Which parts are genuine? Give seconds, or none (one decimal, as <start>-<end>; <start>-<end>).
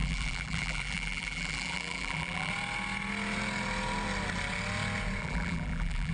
2.5-5.2